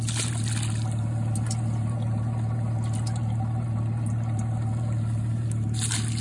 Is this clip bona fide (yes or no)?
yes